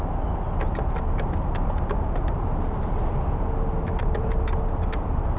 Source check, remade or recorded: recorded